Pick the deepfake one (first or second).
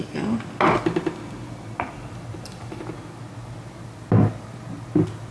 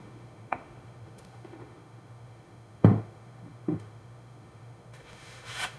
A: second